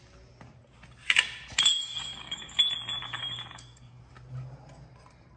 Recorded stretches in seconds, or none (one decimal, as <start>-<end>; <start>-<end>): 0.0-1.8; 2.6-3.0; 4.0-5.4